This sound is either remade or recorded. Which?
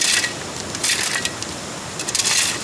recorded